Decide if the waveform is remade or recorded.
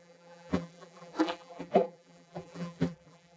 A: remade